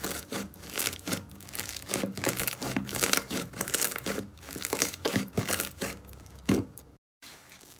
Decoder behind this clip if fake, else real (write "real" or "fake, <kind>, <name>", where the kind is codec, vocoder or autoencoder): fake, codec, DAC